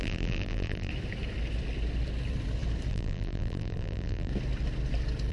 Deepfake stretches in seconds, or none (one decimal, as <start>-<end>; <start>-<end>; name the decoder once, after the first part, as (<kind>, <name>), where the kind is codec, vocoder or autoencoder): 0.0-0.9 (vocoder, BigVGAN v2); 2.9-4.3